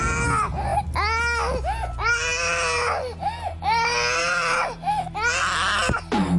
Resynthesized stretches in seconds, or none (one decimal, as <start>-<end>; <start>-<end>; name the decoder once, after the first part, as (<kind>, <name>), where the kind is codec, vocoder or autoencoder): none